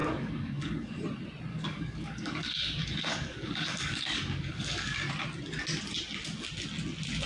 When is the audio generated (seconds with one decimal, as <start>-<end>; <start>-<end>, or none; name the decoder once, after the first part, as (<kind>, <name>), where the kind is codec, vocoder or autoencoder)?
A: 0.0-1.0 (codec, DAC); 1.5-5.1